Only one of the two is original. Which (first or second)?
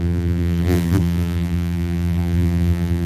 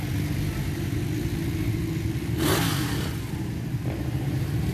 second